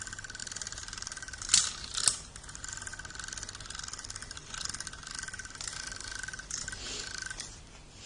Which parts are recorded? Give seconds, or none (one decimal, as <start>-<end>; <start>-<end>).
0.0-0.4; 1.5-8.1